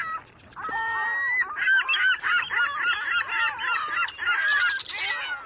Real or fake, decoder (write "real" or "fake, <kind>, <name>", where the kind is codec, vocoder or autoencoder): real